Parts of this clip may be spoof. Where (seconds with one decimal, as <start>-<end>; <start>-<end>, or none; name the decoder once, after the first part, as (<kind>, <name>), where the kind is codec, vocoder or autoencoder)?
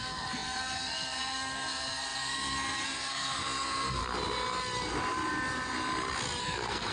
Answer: 0.0-4.0 (codec, SNAC); 6.4-6.9